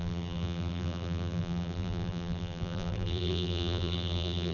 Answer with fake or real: fake